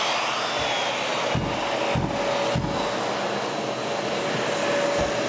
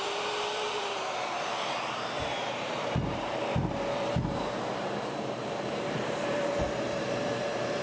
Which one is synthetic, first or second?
second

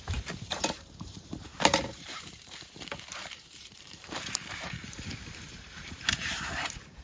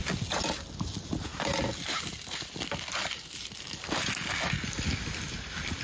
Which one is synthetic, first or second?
first